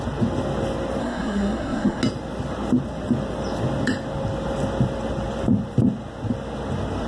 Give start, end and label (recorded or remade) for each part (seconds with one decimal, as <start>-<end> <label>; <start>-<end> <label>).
0.0-1.0 recorded; 1.0-2.0 remade; 2.0-7.1 recorded